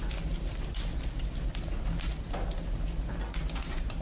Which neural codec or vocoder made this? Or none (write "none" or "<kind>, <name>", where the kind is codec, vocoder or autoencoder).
none